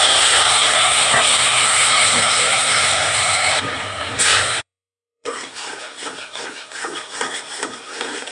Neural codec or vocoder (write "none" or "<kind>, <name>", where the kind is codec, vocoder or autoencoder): codec, SNAC